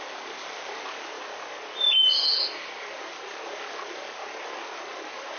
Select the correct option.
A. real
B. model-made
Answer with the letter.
A